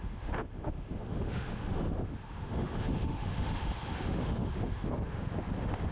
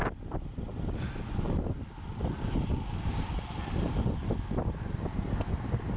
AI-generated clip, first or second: first